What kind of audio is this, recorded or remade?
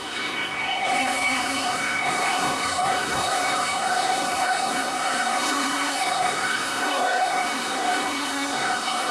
remade